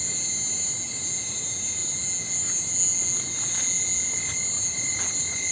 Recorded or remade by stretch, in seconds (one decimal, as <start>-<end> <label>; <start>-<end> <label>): 0.0-5.5 recorded